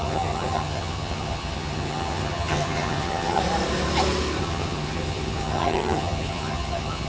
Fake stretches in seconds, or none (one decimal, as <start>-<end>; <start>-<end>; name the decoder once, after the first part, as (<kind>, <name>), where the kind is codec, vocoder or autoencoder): 0.0-3.4 (vocoder, HiFi-GAN); 4.4-7.1

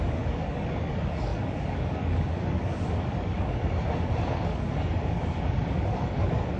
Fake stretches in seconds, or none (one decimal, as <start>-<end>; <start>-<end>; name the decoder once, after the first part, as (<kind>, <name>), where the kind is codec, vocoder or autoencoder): 0.0-6.6 (codec, DAC)

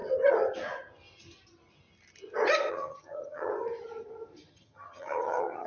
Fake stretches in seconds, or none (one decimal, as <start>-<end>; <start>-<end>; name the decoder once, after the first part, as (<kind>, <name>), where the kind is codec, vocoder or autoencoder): 2.7-3.5 (vocoder, HiFi-GAN); 4.5-5.7